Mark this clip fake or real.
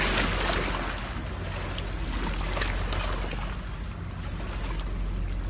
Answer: real